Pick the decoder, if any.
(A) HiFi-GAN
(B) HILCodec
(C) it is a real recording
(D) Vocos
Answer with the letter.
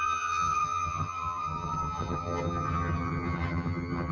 A